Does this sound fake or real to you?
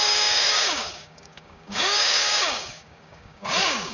fake